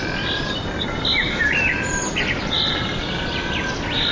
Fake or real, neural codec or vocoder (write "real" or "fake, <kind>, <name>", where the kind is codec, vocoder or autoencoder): real